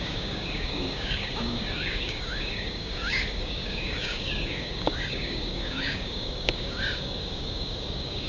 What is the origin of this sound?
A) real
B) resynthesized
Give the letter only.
B